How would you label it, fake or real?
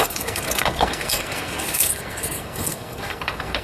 fake